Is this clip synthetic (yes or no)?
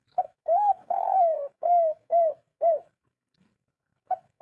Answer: yes